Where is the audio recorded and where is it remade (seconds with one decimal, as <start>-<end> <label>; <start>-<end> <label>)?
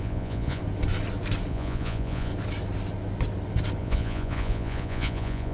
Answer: 0.0-0.6 remade; 0.6-1.5 recorded; 1.5-2.3 remade; 2.3-3.8 recorded; 3.8-5.5 remade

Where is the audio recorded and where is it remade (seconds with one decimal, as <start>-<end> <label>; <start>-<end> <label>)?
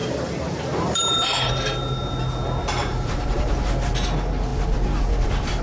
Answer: 0.0-1.5 remade; 1.5-2.8 recorded; 2.8-3.5 remade; 3.5-5.6 recorded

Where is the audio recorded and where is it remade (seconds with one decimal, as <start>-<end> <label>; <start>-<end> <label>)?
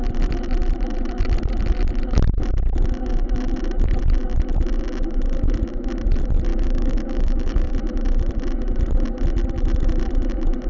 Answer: 0.0-6.5 recorded; 6.5-7.7 remade; 7.7-10.7 recorded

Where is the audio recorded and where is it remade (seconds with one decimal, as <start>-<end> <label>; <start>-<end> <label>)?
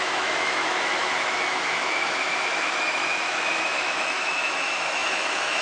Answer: 0.0-5.6 remade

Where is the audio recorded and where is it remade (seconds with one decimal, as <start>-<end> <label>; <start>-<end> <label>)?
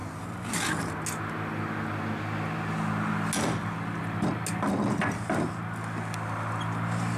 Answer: 0.0-7.2 recorded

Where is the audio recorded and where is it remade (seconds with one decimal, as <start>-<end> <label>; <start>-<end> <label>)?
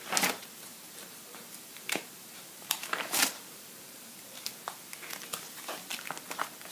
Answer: 0.0-0.7 recorded; 0.7-4.5 remade; 4.5-6.7 recorded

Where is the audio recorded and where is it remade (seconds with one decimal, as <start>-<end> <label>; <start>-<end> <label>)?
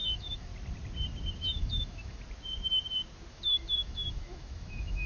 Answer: 0.0-0.5 remade; 0.5-1.3 recorded; 1.3-2.2 remade; 2.2-3.3 recorded; 3.3-5.1 remade